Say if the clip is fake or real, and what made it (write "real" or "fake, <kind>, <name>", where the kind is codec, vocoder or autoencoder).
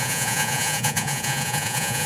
fake, vocoder, Vocos